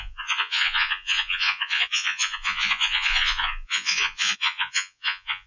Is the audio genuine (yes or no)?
no